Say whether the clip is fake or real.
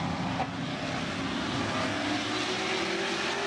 real